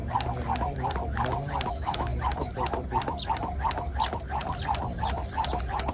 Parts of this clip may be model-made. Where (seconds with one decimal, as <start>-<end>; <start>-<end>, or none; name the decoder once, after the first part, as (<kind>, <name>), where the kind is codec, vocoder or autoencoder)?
1.7-2.1 (autoencoder, DAC-VAE)